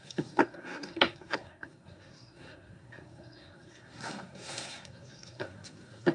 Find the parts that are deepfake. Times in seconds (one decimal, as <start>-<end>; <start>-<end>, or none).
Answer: 0.0-6.1